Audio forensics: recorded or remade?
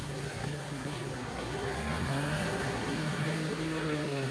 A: remade